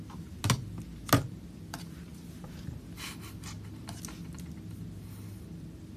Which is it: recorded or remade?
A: recorded